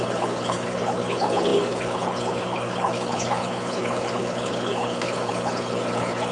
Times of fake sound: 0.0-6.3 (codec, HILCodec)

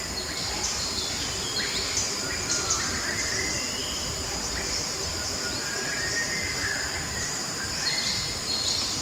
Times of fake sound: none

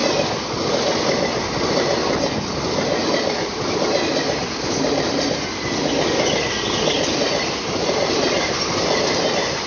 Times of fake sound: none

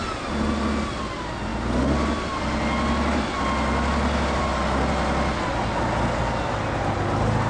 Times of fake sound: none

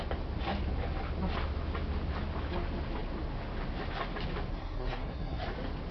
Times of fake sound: 4.5-5.4 (codec, SNAC)